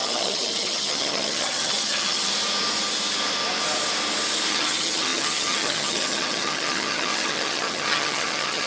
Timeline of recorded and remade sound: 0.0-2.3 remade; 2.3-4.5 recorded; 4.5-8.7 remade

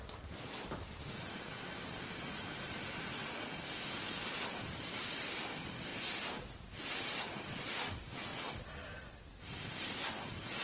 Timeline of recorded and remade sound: 0.0-10.6 recorded

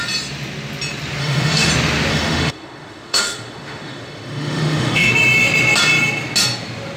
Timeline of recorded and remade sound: 0.0-1.2 recorded; 1.2-1.7 remade; 1.7-2.1 recorded; 2.1-5.1 remade; 5.1-7.0 recorded

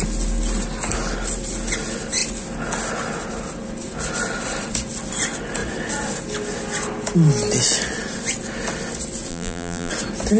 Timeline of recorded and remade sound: 0.0-9.3 recorded; 9.3-9.9 remade; 9.9-10.4 recorded

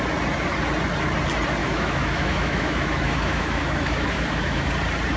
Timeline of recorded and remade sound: 0.0-1.6 recorded; 1.6-4.7 remade; 4.7-5.2 recorded

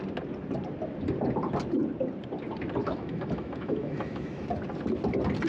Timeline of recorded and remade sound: 0.0-2.8 recorded; 2.8-4.5 remade; 4.5-5.5 recorded

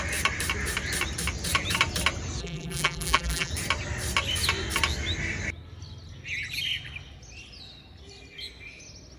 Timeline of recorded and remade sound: 0.0-2.4 recorded; 2.4-3.5 remade; 3.5-9.2 recorded

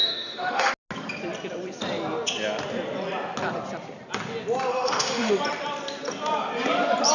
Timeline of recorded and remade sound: 0.0-0.7 remade; 0.7-4.7 recorded; 4.7-5.3 remade; 5.3-7.1 recorded